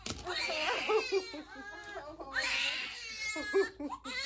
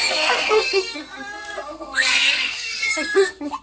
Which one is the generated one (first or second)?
second